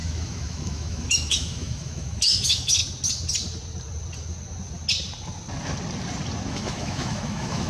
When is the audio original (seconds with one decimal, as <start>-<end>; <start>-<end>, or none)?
2.8-6.5